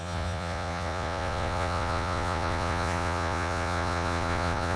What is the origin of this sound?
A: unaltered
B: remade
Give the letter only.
B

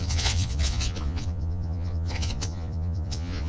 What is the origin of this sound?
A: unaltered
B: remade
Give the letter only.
B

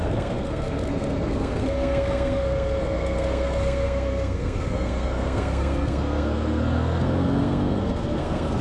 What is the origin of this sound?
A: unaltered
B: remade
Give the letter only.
B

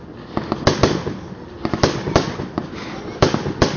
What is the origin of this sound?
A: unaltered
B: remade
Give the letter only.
A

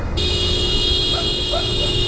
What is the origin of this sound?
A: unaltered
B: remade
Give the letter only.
B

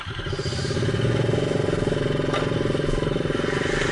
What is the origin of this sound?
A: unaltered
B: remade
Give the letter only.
A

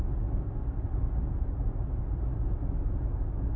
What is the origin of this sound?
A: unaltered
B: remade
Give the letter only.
A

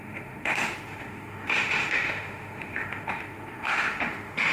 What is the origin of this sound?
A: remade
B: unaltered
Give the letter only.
A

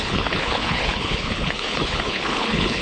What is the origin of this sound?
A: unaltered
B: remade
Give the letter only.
B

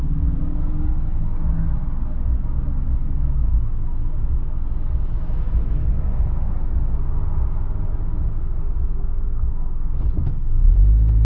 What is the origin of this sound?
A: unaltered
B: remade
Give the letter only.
A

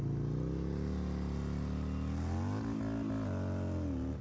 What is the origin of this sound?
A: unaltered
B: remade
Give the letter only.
A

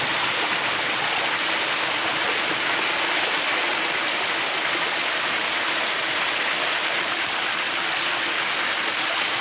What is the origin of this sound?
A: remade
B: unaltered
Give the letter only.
B